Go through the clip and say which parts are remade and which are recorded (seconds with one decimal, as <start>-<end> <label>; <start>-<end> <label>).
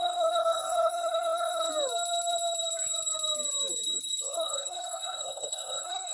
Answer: 0.0-1.7 remade; 1.7-4.2 recorded; 4.2-6.1 remade